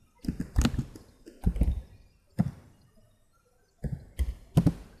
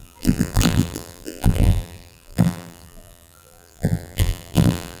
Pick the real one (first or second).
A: first